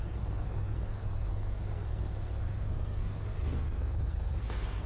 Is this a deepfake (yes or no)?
yes